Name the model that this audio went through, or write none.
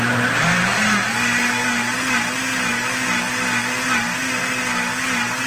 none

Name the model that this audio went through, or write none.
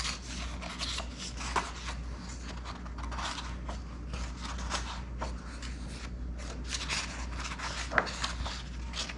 none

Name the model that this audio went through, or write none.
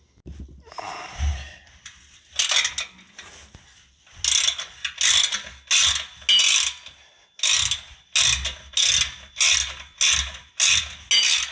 none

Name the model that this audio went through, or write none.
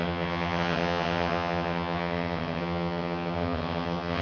vocoder, HiFi-GAN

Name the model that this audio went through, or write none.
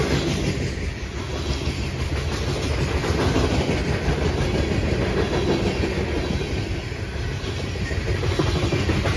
none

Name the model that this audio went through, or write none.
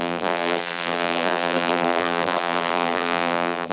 vocoder, BigVGAN v2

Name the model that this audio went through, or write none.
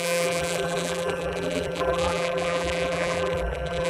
vocoder, BigVGAN v2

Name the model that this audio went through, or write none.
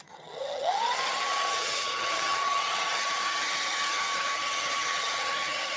vocoder, HiFi-GAN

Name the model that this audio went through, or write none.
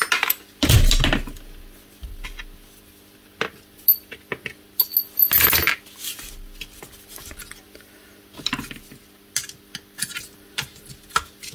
none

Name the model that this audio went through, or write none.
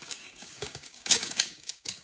codec, DAC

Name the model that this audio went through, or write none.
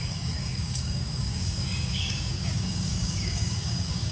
codec, DAC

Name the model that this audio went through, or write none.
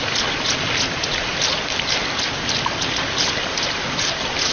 none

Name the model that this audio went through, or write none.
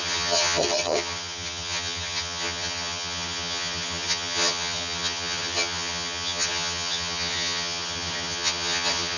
vocoder, HiFi-GAN